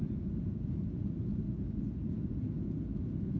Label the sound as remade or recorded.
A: remade